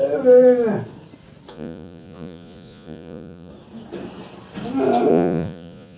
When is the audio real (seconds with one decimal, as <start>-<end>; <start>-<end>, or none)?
0.0-1.5; 3.5-5.1